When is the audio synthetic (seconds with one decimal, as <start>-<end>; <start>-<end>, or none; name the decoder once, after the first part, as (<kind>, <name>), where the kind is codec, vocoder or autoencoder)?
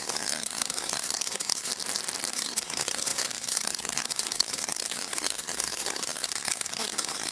0.0-1.7 (codec, SNAC); 2.3-7.3